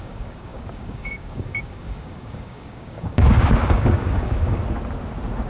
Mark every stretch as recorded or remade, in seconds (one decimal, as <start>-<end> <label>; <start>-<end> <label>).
0.0-4.6 remade; 4.6-5.5 recorded